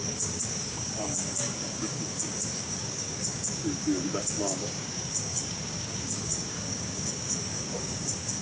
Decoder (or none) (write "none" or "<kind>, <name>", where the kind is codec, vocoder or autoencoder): codec, DAC